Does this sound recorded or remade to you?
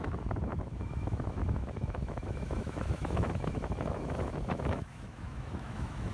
remade